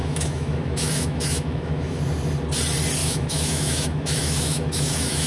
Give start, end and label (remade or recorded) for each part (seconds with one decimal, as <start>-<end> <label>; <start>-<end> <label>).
0.0-2.0 remade; 2.0-3.0 recorded; 3.0-5.3 remade